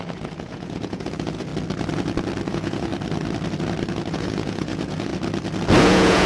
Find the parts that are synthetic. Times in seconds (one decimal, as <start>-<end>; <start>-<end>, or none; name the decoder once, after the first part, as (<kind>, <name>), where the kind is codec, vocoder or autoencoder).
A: 0.0-1.5 (vocoder, Vocos); 2.5-2.9; 4.1-5.1; 5.8-6.3